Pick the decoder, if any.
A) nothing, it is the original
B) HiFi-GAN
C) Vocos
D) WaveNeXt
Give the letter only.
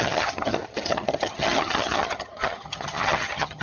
B